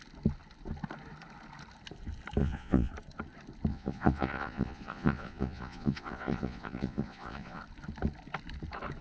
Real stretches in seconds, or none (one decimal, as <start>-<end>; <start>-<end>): 0.0-2.4; 2.9-3.7; 7.6-9.0

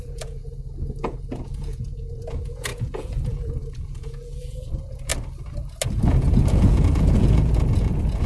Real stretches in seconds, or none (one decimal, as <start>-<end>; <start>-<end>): 0.4-1.0; 5.1-6.0

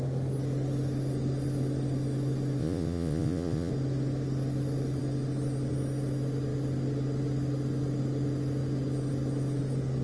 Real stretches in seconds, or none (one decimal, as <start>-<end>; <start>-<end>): 0.0-2.6; 3.7-10.0

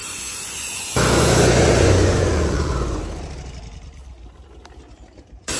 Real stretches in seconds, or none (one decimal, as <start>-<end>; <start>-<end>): 3.0-5.6

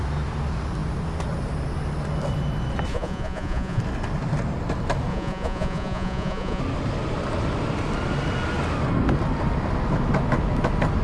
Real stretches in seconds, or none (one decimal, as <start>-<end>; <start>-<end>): 0.0-2.9; 3.8-5.1; 6.6-11.0

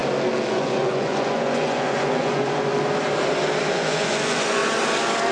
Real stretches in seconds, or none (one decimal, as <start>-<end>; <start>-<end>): 0.0-0.5; 2.7-3.7; 4.6-5.3

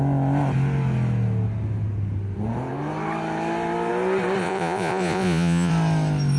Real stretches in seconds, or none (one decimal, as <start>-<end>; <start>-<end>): 0.0-4.4; 5.7-6.4

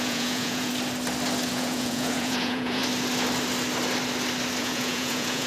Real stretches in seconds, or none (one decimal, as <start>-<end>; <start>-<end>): 0.7-1.5; 2.8-4.6